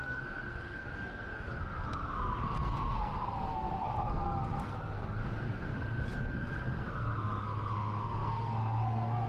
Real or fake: fake